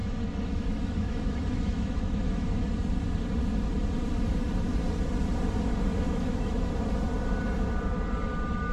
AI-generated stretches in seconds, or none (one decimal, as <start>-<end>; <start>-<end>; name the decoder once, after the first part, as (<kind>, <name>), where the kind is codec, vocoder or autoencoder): 0.0-2.7 (autoencoder, DAC-VAE); 5.9-6.7